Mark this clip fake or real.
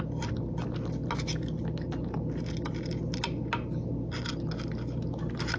real